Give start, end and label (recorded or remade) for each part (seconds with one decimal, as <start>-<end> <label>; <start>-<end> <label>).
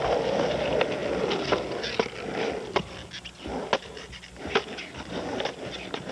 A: 0.0-6.1 recorded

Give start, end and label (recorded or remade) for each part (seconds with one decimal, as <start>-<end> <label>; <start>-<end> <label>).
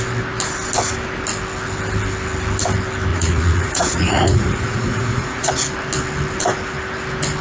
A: 0.0-3.1 recorded; 3.1-5.5 remade; 5.5-7.4 recorded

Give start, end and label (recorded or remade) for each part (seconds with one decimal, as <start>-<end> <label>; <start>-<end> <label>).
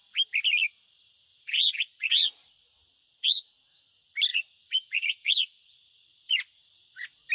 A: 0.0-1.3 recorded; 1.3-3.5 remade; 3.5-4.3 recorded; 4.3-7.3 remade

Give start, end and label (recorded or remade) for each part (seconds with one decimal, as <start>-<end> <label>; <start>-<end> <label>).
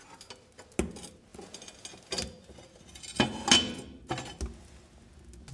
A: 0.0-5.5 recorded